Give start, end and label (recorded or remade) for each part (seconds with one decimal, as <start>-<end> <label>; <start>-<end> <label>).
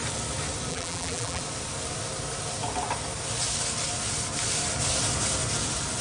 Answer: 0.0-0.7 recorded; 0.7-1.4 remade; 1.4-6.0 recorded